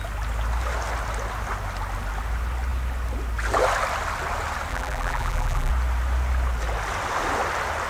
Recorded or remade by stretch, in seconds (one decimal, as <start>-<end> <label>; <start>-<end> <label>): 0.0-4.7 recorded; 4.7-5.7 remade; 5.7-7.9 recorded